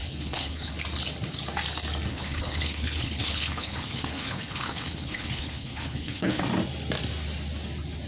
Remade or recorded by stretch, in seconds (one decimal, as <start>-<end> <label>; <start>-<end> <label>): 0.0-0.7 remade; 0.7-2.1 recorded; 2.1-6.4 remade; 6.4-8.1 recorded

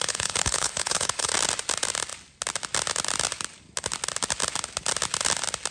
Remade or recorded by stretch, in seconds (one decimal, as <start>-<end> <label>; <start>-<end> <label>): 0.0-1.3 remade; 1.3-5.7 recorded

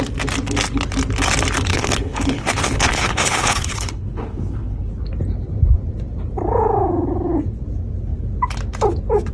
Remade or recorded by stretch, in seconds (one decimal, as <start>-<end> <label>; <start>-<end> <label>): 0.0-1.7 recorded; 1.7-4.9 remade; 4.9-9.3 recorded

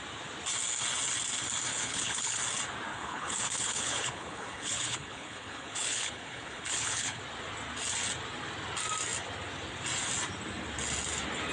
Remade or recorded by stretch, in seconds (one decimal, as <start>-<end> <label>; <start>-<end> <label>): 0.0-1.7 recorded; 1.7-2.4 remade; 2.4-2.9 recorded; 2.9-7.2 remade; 7.2-11.5 recorded

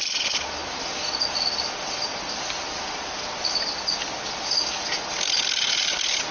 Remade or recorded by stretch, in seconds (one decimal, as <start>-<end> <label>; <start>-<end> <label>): 0.0-6.3 recorded

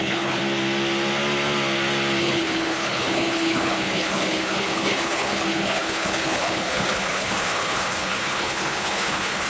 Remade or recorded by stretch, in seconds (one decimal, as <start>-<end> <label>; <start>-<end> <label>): 0.0-0.4 remade; 0.4-2.2 recorded; 2.2-9.5 remade